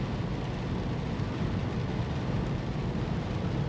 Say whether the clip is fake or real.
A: real